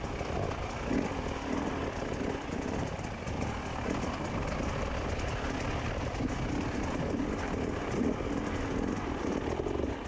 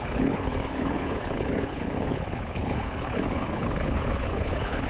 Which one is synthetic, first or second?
second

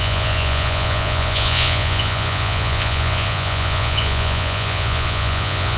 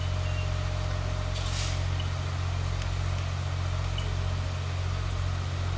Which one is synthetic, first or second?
first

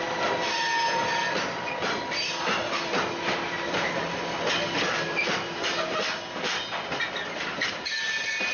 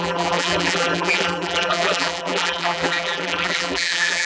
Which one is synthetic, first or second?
second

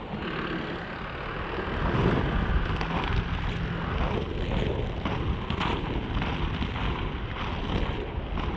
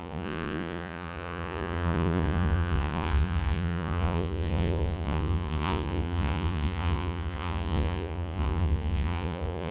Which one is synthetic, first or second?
second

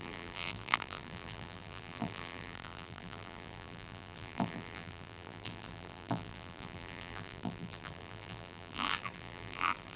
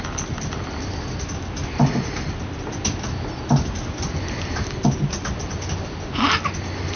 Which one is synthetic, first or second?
first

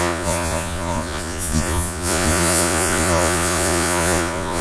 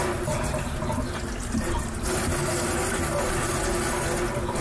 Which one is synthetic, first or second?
first